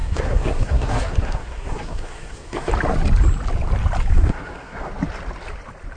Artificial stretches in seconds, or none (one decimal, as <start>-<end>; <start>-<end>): 0.0-2.7; 4.1-4.9